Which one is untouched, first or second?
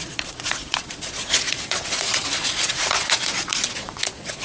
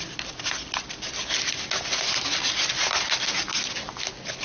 second